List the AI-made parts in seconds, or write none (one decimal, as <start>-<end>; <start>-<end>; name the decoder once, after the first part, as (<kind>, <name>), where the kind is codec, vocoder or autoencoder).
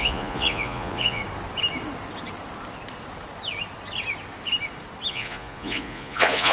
0.0-1.2 (vocoder, Vocos); 5.1-6.5